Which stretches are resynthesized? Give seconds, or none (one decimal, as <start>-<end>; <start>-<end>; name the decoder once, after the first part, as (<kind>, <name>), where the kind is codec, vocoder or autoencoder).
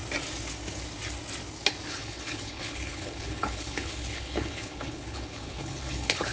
1.9-6.3 (codec, HILCodec)